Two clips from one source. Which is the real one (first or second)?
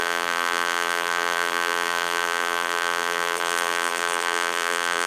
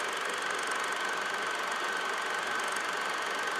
second